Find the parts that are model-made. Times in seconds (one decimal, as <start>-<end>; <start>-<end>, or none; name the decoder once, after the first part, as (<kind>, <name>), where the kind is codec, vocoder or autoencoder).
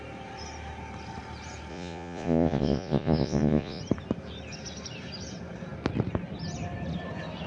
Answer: 1.7-3.8 (vocoder, Vocos)